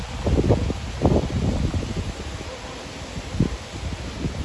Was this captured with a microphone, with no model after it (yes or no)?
yes